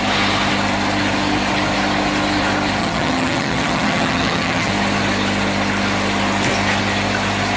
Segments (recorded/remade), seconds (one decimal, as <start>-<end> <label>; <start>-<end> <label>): 0.0-2.8 recorded; 2.8-4.7 remade; 4.7-7.6 recorded